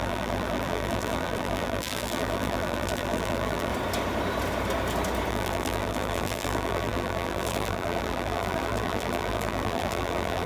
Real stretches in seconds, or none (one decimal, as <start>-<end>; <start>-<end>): 3.7-5.3